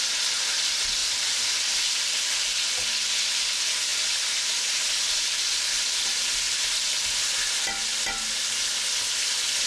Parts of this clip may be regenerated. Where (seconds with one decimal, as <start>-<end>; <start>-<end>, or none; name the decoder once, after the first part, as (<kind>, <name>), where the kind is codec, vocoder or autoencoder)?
1.0-2.5 (vocoder, BigVGAN v2); 3.9-5.8